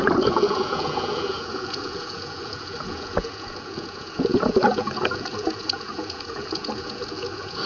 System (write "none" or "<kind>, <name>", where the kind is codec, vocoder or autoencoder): vocoder, Vocos